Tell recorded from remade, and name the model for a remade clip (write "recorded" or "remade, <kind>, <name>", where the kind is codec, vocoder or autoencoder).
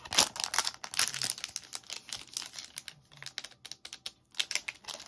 recorded